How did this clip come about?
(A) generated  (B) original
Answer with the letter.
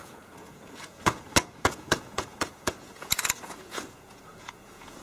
A